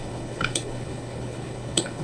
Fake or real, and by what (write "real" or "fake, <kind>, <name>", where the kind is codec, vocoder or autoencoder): fake, codec, HILCodec